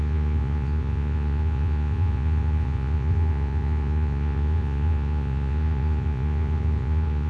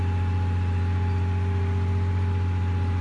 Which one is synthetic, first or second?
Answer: first